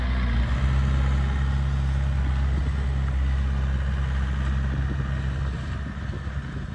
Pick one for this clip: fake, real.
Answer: real